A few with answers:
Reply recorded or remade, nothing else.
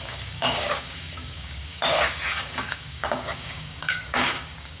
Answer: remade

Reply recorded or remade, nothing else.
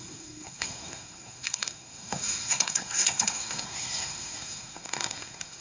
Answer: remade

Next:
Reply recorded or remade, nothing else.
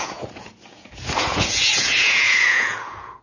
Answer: remade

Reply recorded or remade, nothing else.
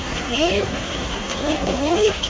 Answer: remade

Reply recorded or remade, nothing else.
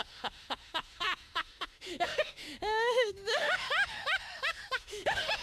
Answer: remade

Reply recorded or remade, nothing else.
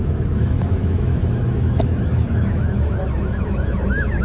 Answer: remade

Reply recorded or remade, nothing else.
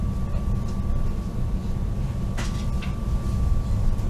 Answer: recorded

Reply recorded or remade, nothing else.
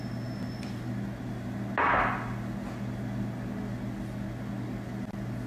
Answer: recorded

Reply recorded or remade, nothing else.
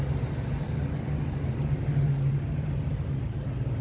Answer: recorded